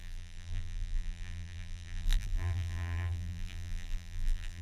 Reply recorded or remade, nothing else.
remade